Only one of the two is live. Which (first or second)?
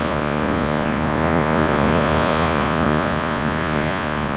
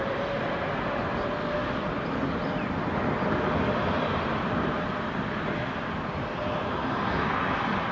second